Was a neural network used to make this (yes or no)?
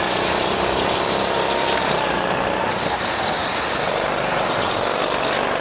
no